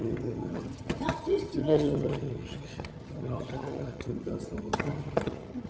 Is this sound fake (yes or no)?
yes